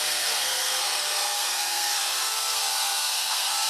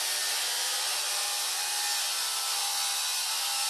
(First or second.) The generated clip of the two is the first